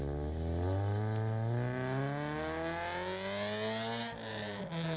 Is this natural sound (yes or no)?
yes